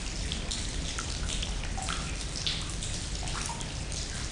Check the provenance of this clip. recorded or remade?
recorded